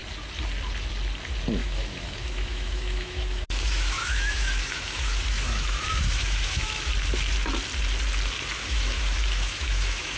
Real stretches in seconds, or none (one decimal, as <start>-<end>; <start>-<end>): 0.0-1.6; 6.9-8.6